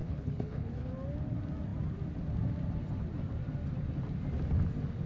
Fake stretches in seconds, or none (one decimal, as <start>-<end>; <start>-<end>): 0.0-0.9